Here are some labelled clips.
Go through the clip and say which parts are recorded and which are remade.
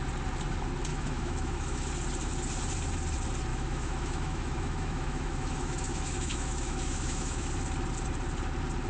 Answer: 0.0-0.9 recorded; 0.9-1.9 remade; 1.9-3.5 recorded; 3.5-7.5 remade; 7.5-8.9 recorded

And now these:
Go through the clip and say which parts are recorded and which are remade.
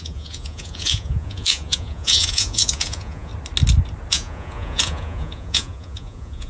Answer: 0.0-3.3 remade; 3.3-4.1 recorded; 4.1-6.5 remade